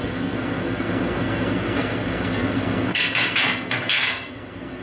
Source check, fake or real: fake